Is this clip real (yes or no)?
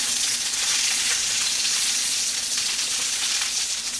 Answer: no